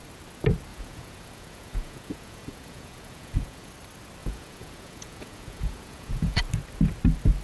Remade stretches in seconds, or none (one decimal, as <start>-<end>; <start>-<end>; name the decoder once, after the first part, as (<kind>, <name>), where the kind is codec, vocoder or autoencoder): 0.7-3.7 (vocoder, Vocos); 4.2-6.4